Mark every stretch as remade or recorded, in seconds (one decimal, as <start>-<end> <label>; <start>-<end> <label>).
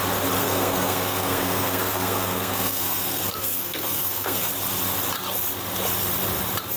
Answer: 0.0-0.4 recorded; 0.4-4.5 remade; 4.5-6.8 recorded